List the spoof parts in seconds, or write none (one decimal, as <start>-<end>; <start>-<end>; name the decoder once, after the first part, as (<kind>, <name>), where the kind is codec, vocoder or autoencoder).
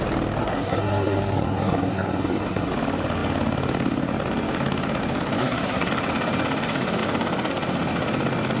0.4-2.7 (codec, SNAC); 5.4-5.9